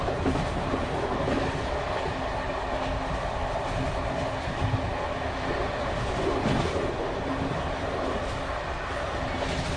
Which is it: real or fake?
real